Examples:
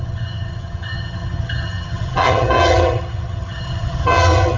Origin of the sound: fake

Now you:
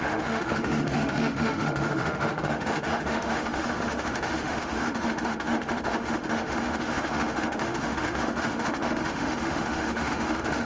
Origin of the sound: fake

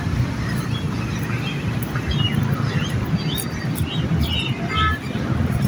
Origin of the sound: real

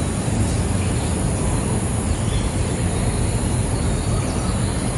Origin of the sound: real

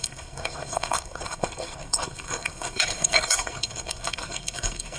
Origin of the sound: fake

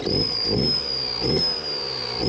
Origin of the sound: real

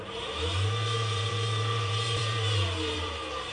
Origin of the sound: fake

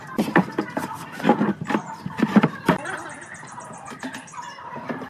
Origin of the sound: fake